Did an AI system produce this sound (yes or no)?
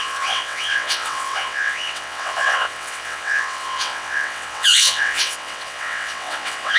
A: yes